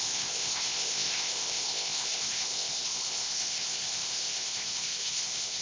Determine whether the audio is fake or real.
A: fake